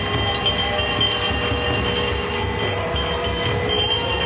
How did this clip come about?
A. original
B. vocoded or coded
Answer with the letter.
A